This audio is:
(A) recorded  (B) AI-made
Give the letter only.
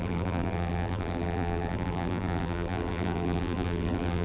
B